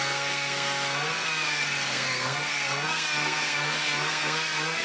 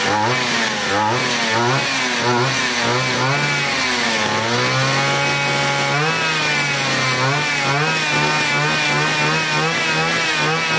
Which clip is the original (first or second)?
second